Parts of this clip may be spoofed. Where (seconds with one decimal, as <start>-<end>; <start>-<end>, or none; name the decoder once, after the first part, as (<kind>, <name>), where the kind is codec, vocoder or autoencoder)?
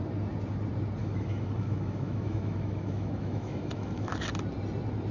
1.0-4.1 (autoencoder, DAC-VAE)